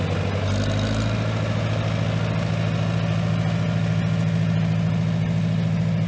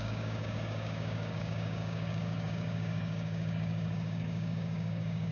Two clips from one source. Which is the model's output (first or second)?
second